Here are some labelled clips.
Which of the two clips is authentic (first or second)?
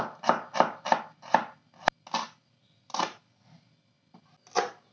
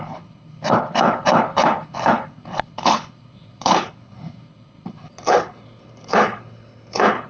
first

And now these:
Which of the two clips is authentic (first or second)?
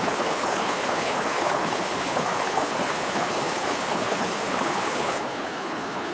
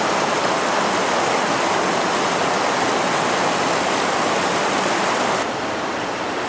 second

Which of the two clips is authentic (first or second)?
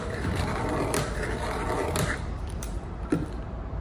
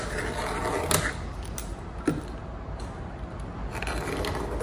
second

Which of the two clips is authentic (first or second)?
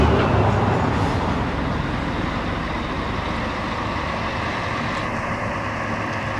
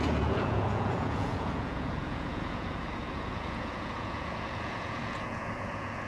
first